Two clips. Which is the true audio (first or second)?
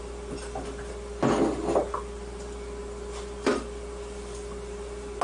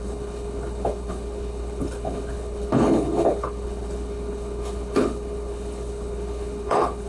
first